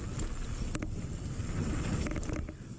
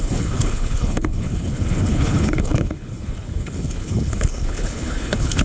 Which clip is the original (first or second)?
first